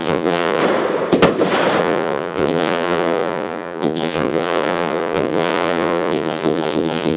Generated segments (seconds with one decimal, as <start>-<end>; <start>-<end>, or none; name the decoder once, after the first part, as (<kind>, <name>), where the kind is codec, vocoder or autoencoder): 0.0-0.6 (vocoder, Vocos); 1.8-7.2